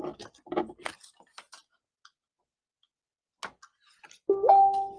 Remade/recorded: recorded